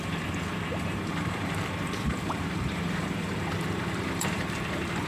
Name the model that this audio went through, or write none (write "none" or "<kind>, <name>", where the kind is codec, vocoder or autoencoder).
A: vocoder, BigVGAN v2